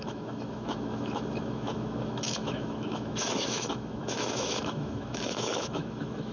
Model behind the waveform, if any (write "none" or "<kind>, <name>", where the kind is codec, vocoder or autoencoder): autoencoder, DAC-VAE